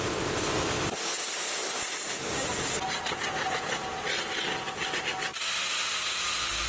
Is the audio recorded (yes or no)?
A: yes